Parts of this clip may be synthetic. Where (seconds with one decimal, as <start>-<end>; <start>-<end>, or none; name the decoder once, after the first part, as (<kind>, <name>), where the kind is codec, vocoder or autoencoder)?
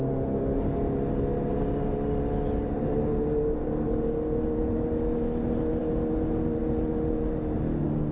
none